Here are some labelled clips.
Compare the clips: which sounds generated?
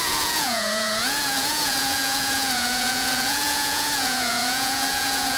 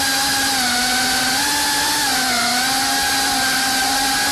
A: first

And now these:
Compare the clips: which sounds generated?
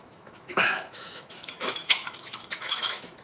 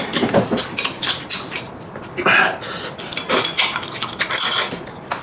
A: first